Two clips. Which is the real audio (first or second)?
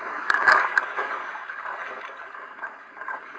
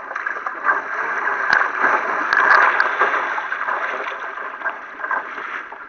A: second